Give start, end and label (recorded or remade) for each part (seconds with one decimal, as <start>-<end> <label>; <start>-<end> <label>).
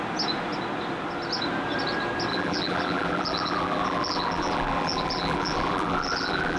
0.0-2.3 recorded; 2.3-6.6 remade